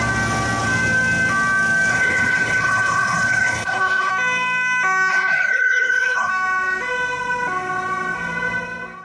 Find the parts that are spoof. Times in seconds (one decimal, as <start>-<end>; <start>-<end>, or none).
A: 1.9-4.1; 5.1-6.3

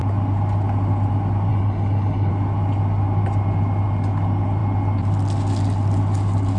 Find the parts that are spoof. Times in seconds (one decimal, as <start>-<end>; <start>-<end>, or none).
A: 1.5-2.3

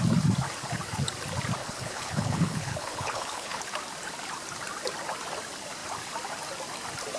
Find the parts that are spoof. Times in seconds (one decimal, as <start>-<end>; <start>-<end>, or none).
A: 1.6-3.6

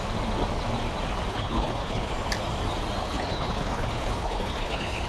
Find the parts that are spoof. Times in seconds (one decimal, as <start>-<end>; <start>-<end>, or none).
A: 1.3-2.1; 3.0-5.1

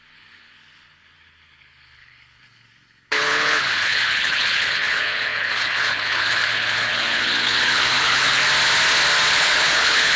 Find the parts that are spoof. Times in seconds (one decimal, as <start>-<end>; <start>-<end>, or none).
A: 0.0-8.4; 9.3-10.2

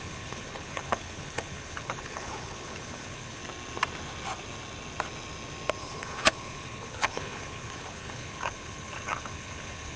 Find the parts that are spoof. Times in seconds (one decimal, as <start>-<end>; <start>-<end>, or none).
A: 0.0-3.4; 5.8-10.0

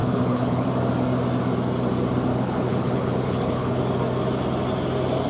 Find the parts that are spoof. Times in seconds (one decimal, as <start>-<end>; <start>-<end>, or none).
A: 0.0-0.7; 2.3-3.8